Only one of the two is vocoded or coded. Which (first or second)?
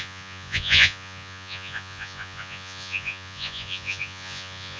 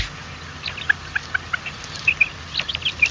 first